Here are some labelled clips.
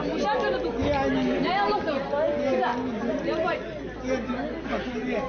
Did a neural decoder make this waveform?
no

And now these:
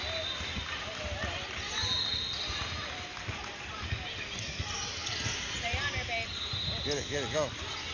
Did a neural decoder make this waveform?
no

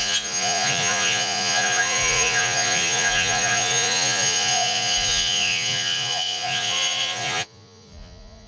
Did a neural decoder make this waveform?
yes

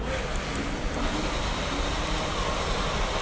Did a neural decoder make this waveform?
no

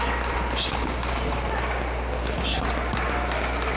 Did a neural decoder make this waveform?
no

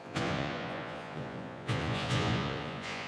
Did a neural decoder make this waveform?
yes